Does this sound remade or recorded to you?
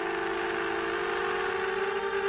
recorded